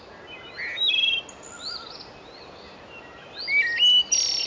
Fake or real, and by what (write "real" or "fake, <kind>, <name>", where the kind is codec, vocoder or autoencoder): real